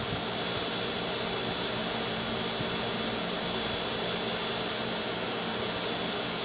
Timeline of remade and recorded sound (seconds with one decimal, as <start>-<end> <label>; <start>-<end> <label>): 0.0-6.4 recorded